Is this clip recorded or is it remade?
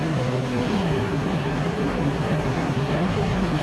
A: remade